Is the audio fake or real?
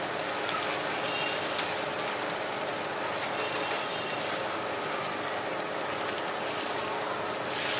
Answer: real